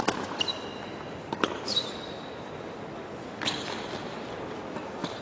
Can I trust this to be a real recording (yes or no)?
yes